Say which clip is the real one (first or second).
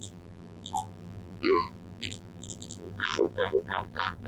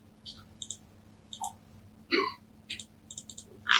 second